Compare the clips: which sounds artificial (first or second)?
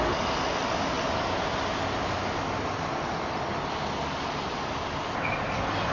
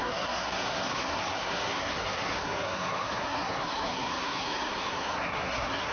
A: second